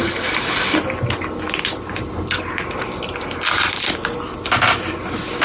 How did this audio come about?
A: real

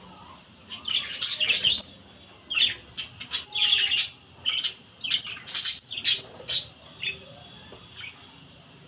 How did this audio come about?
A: real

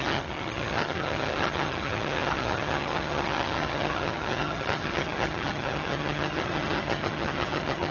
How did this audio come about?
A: fake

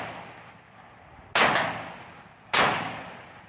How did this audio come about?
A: real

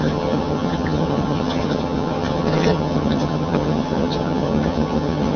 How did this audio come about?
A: fake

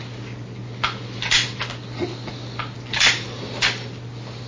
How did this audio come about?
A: real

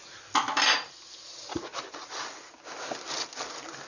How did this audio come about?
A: real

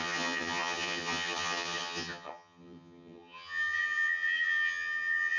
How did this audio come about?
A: fake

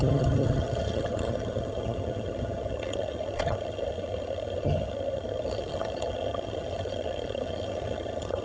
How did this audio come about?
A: fake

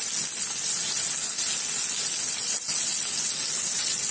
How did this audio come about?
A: real